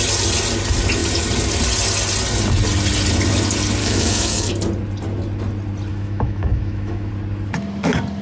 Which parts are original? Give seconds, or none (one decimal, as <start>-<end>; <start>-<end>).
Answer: 0.0-3.8; 4.5-5.9; 7.1-8.2